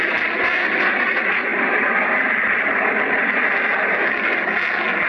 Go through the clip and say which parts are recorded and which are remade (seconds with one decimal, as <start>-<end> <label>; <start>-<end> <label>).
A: 0.0-5.1 recorded